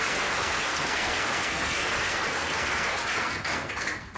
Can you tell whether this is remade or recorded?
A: remade